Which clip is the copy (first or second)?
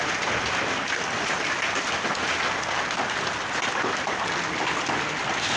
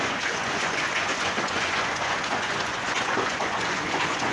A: second